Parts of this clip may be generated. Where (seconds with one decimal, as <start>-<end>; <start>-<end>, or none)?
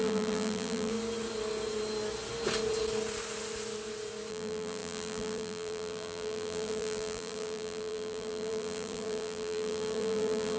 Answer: 0.0-0.9; 4.3-10.6